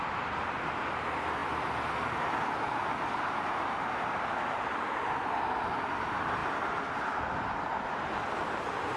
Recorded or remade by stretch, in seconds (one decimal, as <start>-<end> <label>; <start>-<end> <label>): 0.0-9.0 recorded